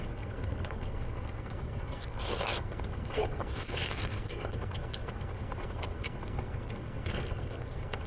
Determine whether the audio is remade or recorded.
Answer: remade